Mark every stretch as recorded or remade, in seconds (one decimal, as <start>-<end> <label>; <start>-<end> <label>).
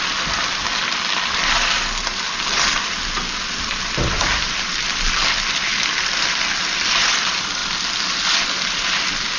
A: 0.0-9.4 recorded